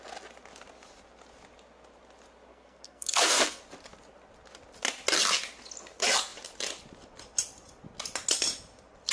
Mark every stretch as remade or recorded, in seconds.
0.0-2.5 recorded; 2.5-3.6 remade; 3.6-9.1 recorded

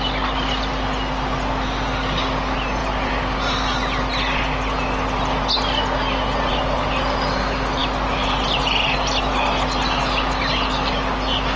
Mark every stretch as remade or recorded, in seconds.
0.0-11.6 recorded

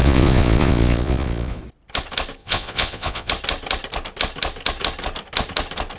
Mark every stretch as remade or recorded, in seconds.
0.0-1.6 remade; 1.6-2.4 recorded; 2.4-3.3 remade; 3.3-6.0 recorded